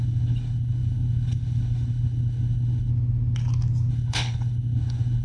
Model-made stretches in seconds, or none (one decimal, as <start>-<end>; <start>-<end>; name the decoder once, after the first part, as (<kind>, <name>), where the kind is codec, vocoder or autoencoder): 0.0-2.9 (codec, HILCodec); 3.9-5.2